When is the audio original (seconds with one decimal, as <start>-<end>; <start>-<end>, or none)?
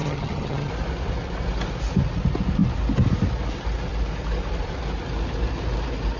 0.7-6.2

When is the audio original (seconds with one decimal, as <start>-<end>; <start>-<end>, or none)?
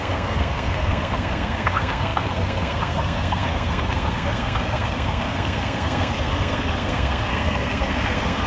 none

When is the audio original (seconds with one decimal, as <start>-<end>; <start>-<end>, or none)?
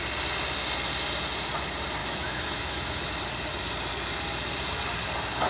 0.0-2.0; 3.2-5.5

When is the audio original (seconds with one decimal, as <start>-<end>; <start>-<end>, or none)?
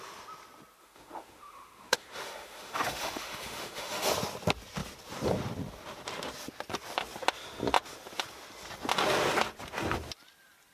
0.0-0.8; 4.1-10.7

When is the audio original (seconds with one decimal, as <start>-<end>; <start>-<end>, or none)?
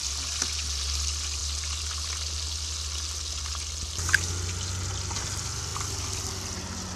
0.0-7.0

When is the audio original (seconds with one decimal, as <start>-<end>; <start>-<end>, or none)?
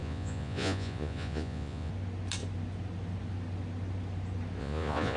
1.9-4.6